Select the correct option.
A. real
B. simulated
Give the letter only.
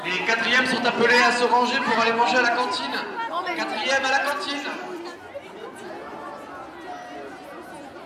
A